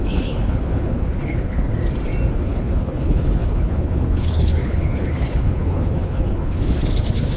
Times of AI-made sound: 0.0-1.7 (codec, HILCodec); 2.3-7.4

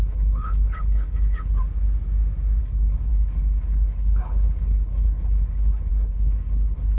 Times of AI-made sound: 0.0-1.6 (codec, HILCodec); 2.6-7.0

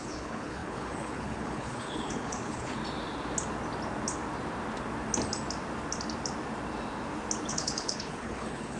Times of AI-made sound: 0.0-2.8 (codec, HILCodec); 7.5-8.8

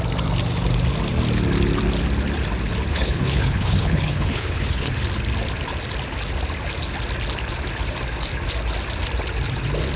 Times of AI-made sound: 2.9-4.9 (codec, HILCodec)

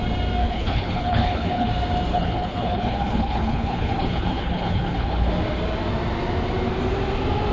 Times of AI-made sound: 0.4-1.7 (codec, HILCodec); 2.1-5.3

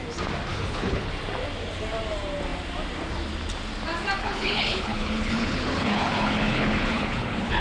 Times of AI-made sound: 0.5-1.1 (codec, HILCodec); 4.2-7.6

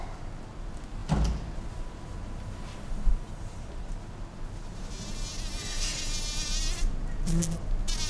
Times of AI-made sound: none

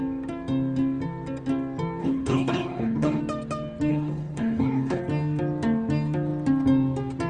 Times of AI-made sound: 2.0-3.2 (codec, HILCodec); 3.9-5.0